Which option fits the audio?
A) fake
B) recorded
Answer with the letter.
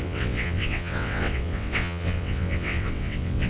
A